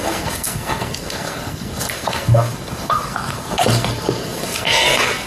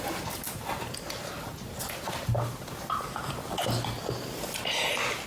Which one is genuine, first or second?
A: second